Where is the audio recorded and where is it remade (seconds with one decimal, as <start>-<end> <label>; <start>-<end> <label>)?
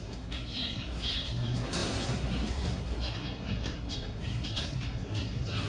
0.0-5.7 remade